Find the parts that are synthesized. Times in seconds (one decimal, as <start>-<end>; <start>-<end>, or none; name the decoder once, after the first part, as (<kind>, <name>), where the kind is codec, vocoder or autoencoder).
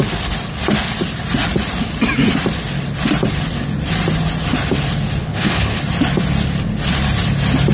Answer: 5.2-5.8 (codec, HILCodec)